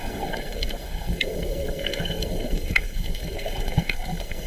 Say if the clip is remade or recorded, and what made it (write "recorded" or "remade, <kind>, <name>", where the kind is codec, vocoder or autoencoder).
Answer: remade, codec, SNAC